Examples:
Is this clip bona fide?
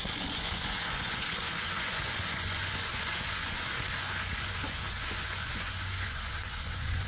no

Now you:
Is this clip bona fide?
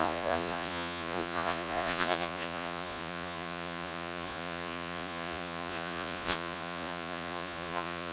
no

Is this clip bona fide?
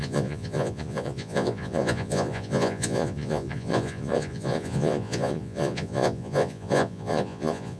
no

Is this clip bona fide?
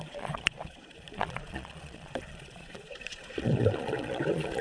no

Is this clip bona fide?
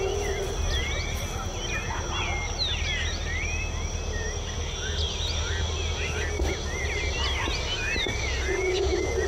yes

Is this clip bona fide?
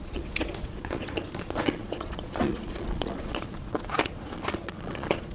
no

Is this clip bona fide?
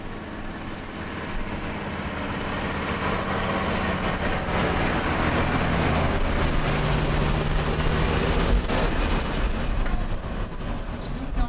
yes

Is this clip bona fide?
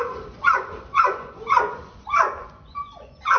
no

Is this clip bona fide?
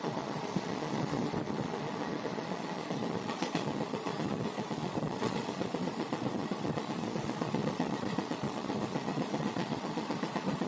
no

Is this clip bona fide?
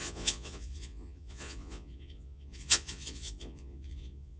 no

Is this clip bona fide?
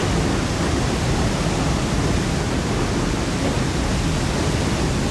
yes